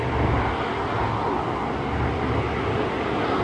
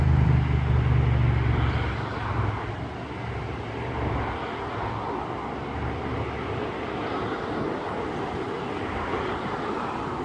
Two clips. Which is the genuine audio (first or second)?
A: first